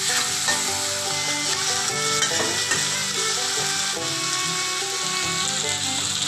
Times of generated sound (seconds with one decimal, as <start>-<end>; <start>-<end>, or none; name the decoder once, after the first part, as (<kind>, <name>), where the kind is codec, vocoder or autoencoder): none